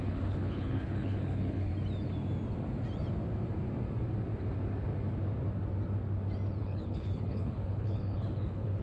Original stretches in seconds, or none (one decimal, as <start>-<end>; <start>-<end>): 1.7-6.6